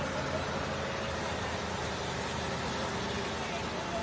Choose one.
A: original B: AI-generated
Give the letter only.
A